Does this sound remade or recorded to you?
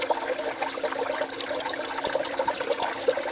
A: recorded